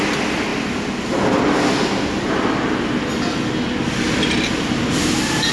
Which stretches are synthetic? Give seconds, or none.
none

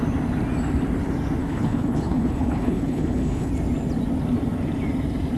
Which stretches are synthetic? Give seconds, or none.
1.4-3.5 (codec, HILCodec)

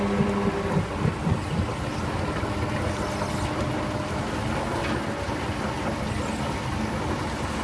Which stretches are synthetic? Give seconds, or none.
none

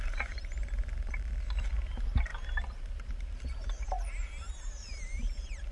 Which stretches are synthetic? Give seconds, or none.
0.0-2.3 (vocoder, BigVGAN v2); 3.1-5.7

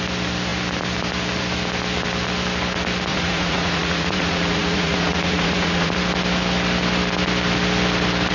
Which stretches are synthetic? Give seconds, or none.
3.1-5.9 (vocoder, Vocos)